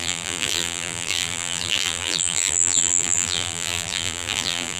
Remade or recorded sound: remade